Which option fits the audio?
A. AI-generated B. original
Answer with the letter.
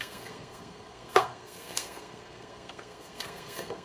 A